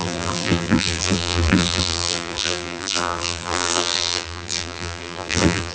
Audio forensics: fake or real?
fake